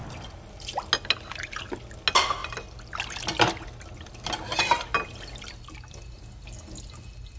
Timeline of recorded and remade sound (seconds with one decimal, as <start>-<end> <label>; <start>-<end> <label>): 0.0-7.4 recorded